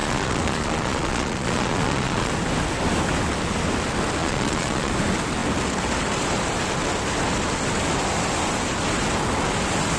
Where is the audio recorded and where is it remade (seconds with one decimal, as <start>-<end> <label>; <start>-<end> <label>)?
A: 0.0-2.3 remade; 2.3-4.2 recorded; 4.2-4.9 remade; 4.9-10.0 recorded

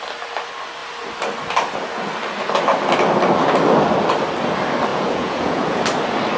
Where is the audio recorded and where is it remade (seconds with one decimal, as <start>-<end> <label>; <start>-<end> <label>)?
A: 0.0-4.9 recorded; 4.9-5.8 remade; 5.8-6.4 recorded

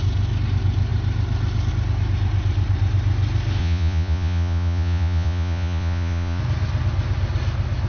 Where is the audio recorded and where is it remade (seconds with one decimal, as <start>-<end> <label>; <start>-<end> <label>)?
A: 0.0-3.6 recorded; 3.6-6.4 remade; 6.4-7.9 recorded

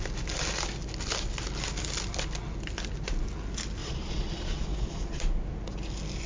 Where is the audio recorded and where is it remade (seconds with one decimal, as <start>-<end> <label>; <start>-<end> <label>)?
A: 0.0-3.8 recorded; 3.8-5.2 remade; 5.2-6.3 recorded

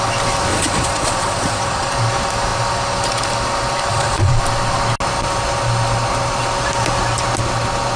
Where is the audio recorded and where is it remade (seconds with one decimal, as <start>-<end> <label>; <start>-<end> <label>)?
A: 0.0-0.5 recorded; 0.5-1.9 remade; 1.9-3.9 recorded; 3.9-4.4 remade; 4.4-8.0 recorded

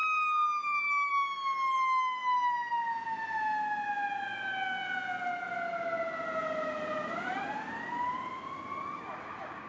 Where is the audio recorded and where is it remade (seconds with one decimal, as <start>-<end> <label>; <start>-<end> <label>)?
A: 0.0-9.7 recorded